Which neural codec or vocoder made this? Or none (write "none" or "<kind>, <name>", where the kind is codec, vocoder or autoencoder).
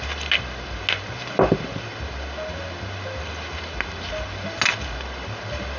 none